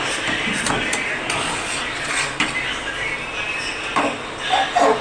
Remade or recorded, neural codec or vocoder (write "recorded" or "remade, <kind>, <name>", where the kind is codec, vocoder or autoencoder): recorded